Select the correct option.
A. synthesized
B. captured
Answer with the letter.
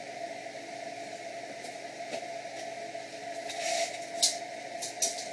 B